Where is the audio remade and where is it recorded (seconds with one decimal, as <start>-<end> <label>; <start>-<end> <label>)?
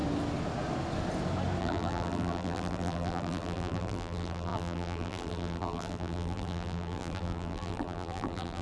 0.0-1.6 recorded; 1.6-8.6 remade